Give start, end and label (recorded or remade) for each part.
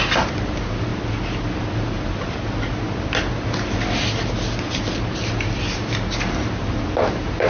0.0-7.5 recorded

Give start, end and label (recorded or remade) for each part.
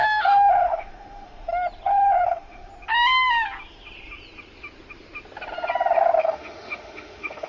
0.0-1.5 remade; 1.5-2.2 recorded; 2.2-2.7 remade; 2.7-6.2 recorded; 6.2-7.5 remade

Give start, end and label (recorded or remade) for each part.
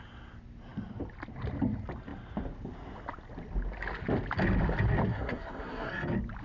0.0-5.1 recorded; 5.1-5.9 remade; 5.9-6.4 recorded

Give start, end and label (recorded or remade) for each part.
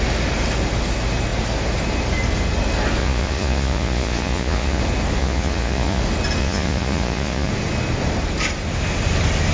0.0-3.0 recorded; 3.0-4.8 remade; 4.8-5.2 recorded; 5.2-6.0 remade; 6.0-6.4 recorded; 6.4-7.5 remade; 7.5-9.5 recorded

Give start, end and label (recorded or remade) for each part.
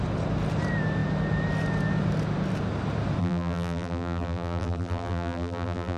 0.0-3.2 recorded; 3.2-6.0 remade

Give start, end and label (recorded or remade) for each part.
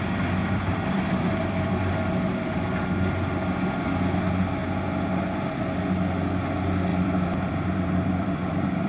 0.0-0.4 recorded; 0.4-1.8 remade; 1.8-6.9 recorded; 6.9-8.9 remade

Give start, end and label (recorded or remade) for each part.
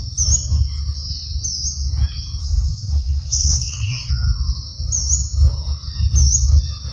0.0-2.4 recorded; 2.4-4.1 remade; 4.1-6.9 recorded